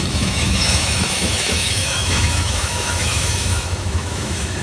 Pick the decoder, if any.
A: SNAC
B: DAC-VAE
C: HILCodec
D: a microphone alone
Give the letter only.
B